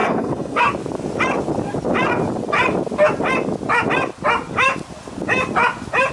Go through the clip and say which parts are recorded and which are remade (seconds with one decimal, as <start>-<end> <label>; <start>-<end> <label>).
0.0-0.6 remade; 0.6-6.1 recorded